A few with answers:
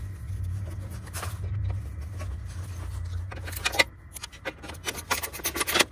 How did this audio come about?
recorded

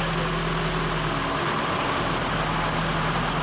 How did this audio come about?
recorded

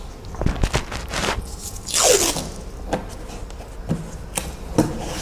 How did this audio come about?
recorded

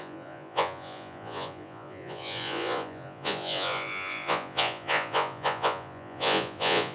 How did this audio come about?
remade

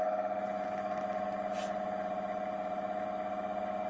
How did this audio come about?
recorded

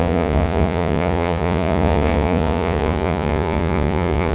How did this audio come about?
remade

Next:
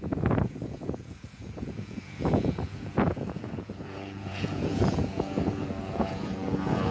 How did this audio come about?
remade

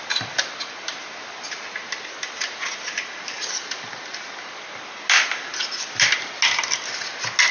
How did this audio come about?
recorded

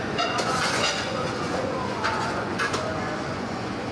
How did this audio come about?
remade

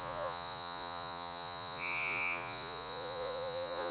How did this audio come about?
remade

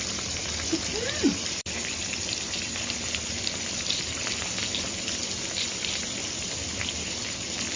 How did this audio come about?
recorded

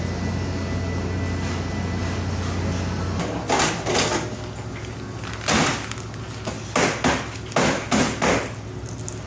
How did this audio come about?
recorded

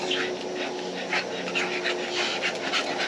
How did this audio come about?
recorded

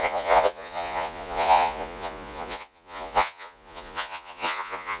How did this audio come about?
remade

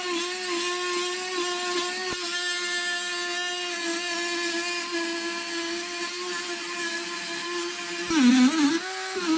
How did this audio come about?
recorded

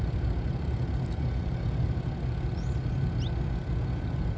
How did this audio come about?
recorded